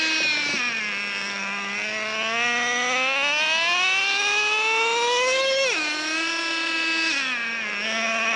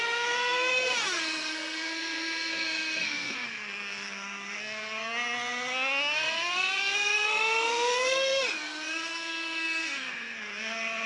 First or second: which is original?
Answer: first